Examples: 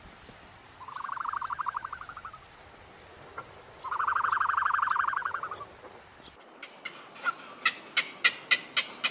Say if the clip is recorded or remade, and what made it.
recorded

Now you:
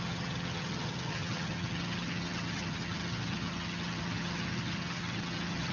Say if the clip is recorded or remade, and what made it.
remade, vocoder, HiFi-GAN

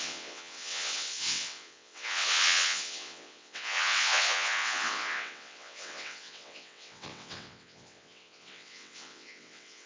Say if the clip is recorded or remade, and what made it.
remade, vocoder, WaveNeXt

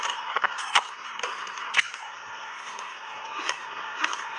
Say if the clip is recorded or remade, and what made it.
remade, codec, SNAC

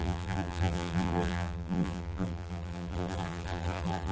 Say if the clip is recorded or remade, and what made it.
remade, vocoder, BigVGAN v2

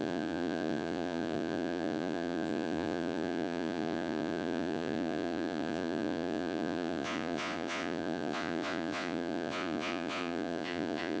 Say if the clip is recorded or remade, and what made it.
remade, vocoder, Vocos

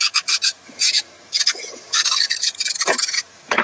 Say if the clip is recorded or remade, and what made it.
remade, autoencoder, DAC-VAE